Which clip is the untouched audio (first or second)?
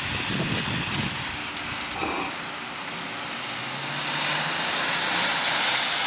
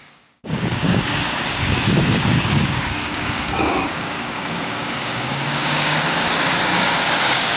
first